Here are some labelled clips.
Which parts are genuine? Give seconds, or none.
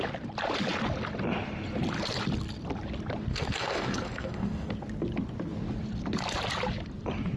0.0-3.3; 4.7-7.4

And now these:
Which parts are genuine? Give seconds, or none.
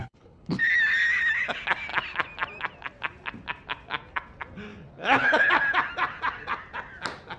0.6-4.7; 5.5-7.4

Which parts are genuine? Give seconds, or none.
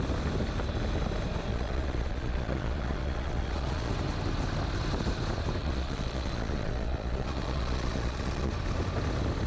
0.0-1.5; 3.9-5.6; 8.5-9.5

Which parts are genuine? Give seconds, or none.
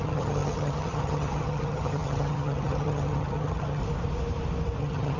3.8-4.8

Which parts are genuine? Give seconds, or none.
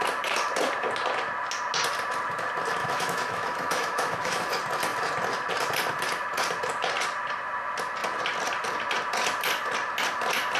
0.0-2.8; 4.5-10.6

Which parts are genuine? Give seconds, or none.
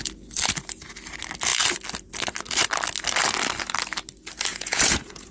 0.0-4.5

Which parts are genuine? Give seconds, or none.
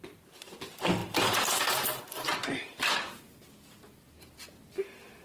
0.0-1.0; 4.1-5.2